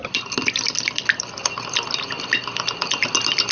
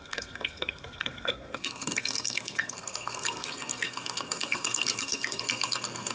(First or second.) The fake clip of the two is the second